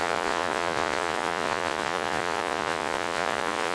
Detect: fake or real fake